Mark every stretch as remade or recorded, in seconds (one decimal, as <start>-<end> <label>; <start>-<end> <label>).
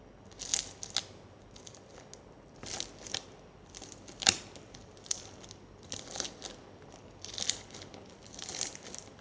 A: 0.0-0.5 remade; 0.5-2.2 recorded; 2.2-9.2 remade